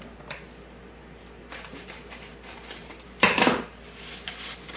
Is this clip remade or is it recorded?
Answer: remade